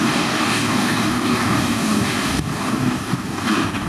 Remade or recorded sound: remade